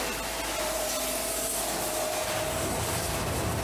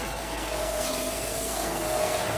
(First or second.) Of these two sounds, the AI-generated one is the second